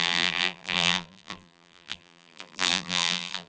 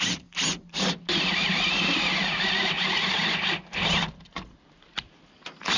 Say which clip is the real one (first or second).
second